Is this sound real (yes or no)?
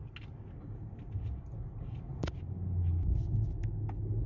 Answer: yes